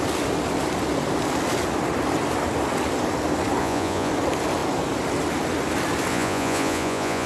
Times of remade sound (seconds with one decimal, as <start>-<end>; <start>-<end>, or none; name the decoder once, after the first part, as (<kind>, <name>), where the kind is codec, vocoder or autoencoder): 3.6-4.1 (vocoder, Vocos); 6.1-7.3